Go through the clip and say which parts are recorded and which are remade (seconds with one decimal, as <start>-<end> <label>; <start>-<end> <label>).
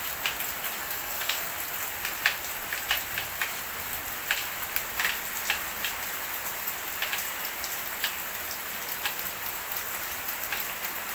0.0-0.8 recorded; 0.8-1.5 remade; 1.5-11.1 recorded